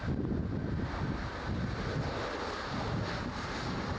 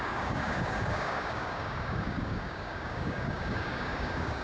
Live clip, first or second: first